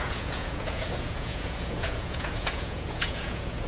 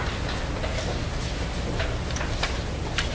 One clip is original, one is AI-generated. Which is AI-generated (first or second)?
first